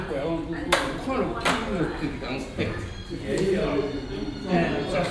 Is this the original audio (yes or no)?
yes